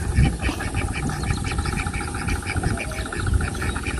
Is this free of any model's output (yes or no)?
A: yes